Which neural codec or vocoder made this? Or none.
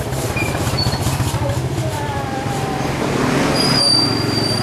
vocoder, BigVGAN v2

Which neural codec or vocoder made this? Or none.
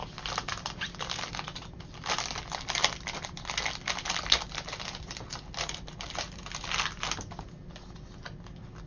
none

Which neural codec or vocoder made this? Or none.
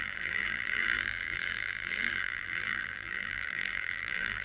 vocoder, BigVGAN v2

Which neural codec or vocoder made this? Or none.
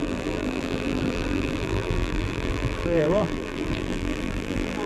vocoder, BigVGAN v2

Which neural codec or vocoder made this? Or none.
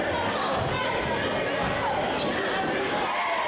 none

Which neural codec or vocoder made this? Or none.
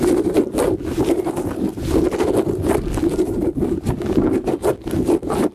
none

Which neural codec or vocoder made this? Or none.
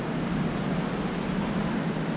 none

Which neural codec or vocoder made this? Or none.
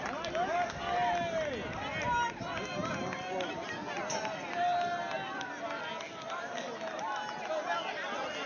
none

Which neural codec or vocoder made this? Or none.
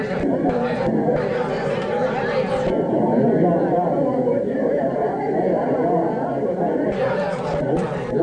none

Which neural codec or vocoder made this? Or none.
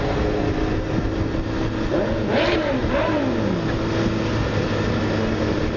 none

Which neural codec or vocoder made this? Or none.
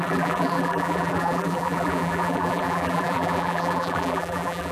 vocoder, BigVGAN v2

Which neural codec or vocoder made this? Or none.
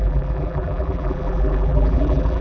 vocoder, BigVGAN v2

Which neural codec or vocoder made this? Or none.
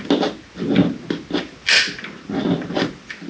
none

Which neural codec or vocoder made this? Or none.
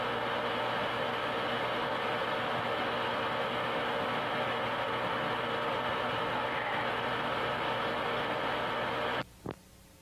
none